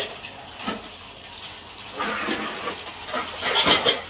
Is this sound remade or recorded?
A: recorded